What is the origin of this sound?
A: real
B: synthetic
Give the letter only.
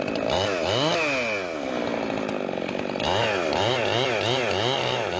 A